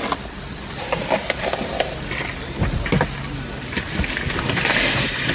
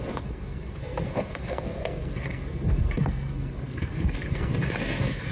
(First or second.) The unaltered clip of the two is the first